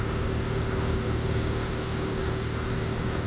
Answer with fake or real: fake